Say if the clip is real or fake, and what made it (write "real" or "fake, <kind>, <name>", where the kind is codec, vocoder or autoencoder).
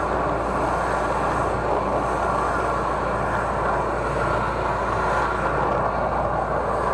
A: real